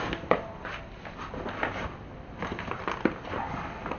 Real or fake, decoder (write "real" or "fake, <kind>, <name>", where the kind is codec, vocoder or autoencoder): real